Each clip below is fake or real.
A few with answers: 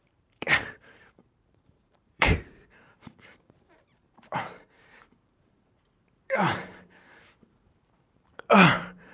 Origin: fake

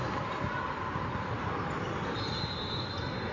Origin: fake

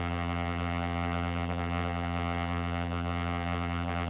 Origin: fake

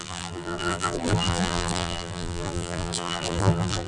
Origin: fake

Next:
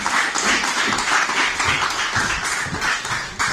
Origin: real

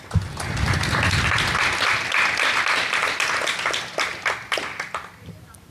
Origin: fake